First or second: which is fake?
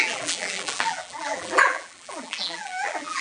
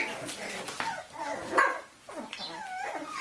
first